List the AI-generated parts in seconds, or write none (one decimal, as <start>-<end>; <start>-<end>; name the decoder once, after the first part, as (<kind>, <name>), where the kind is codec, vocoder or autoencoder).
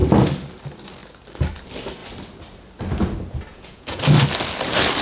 3.5-4.0 (vocoder, Vocos)